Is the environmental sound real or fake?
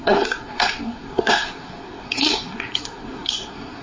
fake